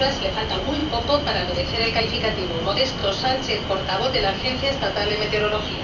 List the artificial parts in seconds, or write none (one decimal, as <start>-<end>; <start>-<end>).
none